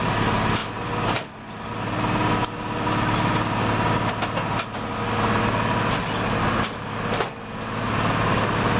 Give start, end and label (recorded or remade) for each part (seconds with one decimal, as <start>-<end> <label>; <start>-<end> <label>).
0.0-8.8 recorded